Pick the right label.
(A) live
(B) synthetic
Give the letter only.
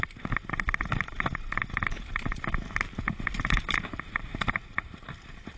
A